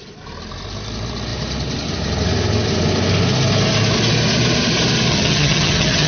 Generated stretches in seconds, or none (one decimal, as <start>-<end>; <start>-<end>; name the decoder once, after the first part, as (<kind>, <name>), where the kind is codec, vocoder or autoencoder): 5.1-6.1 (vocoder, HiFi-GAN)